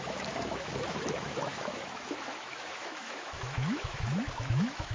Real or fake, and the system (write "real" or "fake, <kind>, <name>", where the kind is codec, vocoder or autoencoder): fake, autoencoder, DAC-VAE